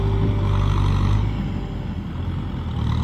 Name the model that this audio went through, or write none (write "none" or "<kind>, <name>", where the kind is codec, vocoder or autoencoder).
none